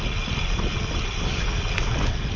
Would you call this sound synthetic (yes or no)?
no